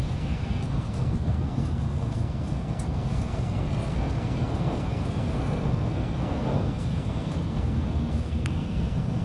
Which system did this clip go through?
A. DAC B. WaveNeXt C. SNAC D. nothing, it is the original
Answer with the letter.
C